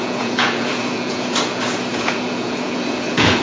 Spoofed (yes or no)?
yes